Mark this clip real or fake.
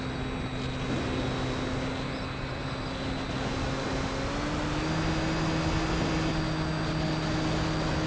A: real